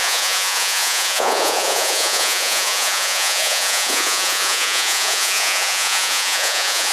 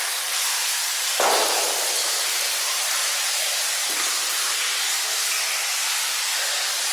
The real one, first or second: second